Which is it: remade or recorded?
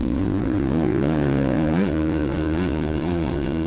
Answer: remade